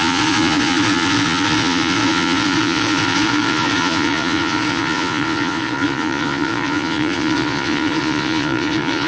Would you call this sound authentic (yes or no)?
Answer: no